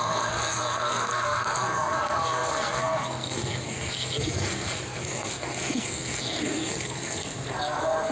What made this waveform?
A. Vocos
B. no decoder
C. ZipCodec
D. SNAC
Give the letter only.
D